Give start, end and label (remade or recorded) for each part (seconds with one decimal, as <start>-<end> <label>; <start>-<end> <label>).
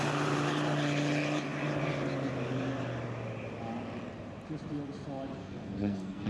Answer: 0.0-5.4 recorded; 5.4-6.3 remade